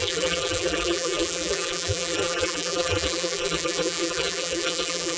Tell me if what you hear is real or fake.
fake